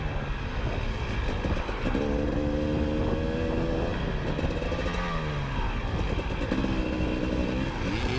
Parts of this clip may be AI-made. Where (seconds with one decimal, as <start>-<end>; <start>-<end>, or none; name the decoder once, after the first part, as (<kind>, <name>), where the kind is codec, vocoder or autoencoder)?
none